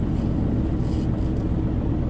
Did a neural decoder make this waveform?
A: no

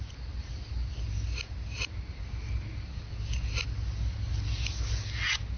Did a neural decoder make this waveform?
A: no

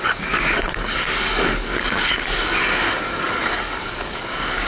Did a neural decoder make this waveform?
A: yes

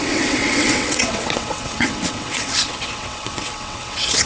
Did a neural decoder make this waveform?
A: yes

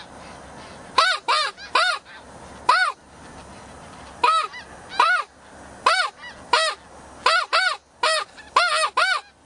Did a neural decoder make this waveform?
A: no